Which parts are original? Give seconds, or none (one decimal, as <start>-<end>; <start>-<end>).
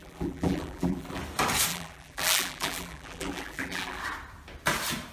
1.2-1.7; 4.0-5.1